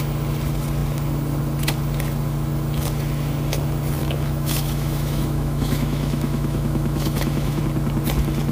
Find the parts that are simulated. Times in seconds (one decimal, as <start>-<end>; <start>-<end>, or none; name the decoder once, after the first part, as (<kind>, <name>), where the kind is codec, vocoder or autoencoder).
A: 4.0-7.6 (autoencoder, DAC-VAE)